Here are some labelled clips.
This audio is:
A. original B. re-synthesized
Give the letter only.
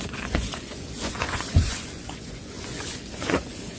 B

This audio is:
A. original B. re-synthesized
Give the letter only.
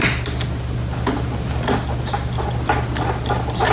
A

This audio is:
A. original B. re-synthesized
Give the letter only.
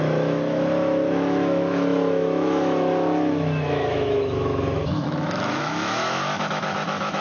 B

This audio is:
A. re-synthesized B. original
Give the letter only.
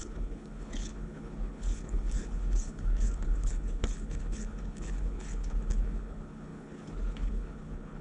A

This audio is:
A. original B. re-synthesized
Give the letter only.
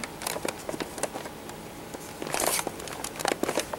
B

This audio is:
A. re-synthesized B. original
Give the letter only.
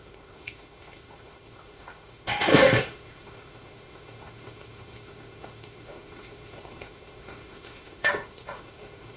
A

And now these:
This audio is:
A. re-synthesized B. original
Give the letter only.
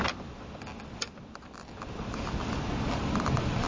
B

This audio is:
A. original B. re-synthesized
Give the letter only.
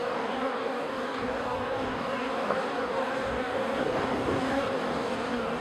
B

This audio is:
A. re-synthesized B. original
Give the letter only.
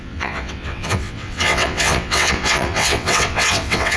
A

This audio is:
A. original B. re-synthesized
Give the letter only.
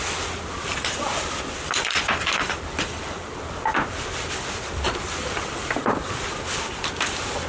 A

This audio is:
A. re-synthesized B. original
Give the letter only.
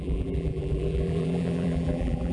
A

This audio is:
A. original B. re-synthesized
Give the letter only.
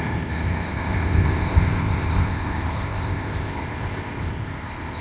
B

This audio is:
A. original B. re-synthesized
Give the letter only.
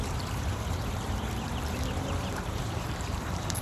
B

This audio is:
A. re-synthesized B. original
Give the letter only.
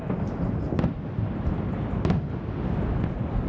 B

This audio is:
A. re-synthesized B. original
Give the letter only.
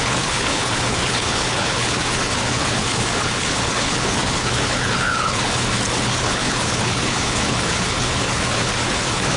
A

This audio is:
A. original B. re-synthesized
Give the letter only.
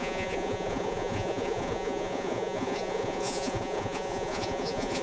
B